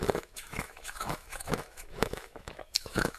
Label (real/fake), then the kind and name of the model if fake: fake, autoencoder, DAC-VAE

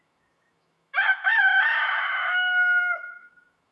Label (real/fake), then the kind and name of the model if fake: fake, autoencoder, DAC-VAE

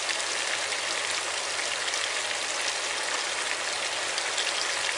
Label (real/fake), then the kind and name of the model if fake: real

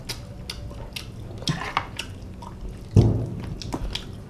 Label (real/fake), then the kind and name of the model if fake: real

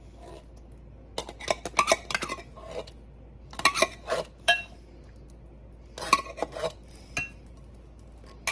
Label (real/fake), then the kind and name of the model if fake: real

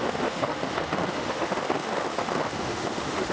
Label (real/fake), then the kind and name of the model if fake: fake, autoencoder, DAC-VAE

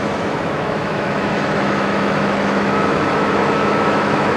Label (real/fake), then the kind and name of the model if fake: fake, autoencoder, DAC-VAE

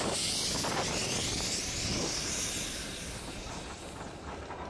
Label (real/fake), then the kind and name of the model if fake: real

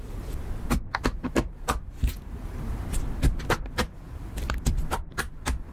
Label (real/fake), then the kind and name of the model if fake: real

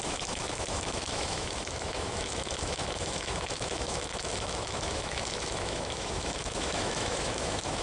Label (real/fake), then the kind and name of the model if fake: fake, autoencoder, DAC-VAE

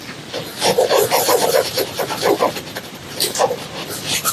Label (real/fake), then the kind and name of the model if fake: real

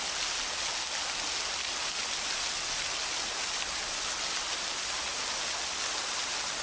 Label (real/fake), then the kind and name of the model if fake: real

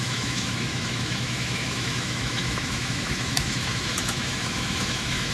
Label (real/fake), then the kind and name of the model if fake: fake, autoencoder, DAC-VAE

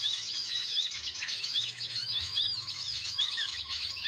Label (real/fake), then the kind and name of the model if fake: fake, autoencoder, DAC-VAE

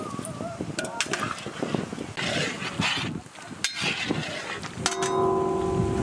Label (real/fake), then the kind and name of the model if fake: real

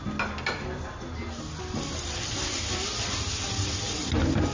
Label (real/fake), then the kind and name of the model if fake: real